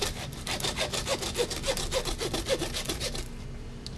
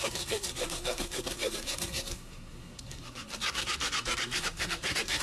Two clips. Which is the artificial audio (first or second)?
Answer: second